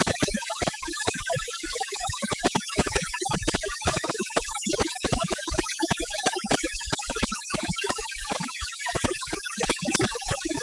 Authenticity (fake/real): fake